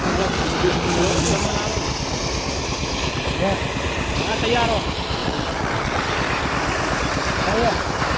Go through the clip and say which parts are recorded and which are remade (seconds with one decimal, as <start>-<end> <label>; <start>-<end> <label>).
0.0-5.2 recorded; 5.2-6.1 remade; 6.1-8.2 recorded